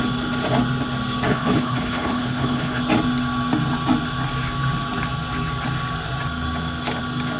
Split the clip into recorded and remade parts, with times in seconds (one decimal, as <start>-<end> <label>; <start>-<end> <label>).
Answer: 0.0-1.3 recorded; 1.3-2.8 remade; 2.8-7.4 recorded